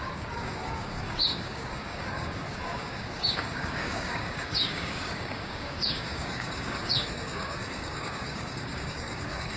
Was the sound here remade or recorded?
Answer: remade